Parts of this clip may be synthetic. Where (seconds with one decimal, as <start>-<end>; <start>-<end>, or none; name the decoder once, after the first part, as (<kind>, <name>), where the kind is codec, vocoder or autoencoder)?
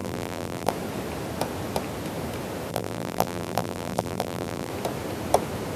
0.0-0.7 (vocoder, BigVGAN v2); 2.7-4.7